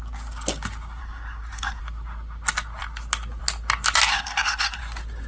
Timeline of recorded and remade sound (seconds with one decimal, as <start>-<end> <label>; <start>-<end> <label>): 0.0-1.0 recorded; 1.0-1.8 remade; 1.8-4.1 recorded; 4.1-4.8 remade; 4.8-5.3 recorded